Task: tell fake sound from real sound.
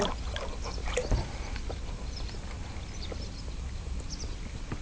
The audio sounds real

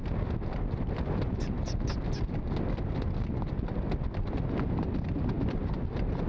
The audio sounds real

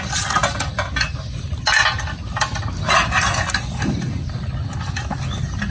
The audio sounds real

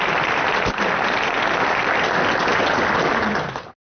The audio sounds real